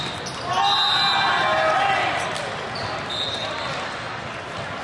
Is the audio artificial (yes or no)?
no